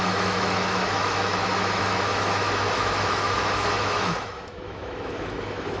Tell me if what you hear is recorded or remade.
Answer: remade